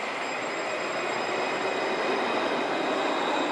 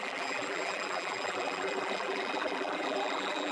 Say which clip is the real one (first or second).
first